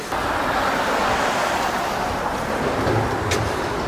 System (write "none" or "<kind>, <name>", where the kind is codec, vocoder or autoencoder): none